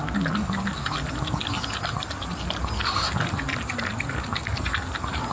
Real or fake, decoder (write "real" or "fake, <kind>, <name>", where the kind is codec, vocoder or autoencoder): real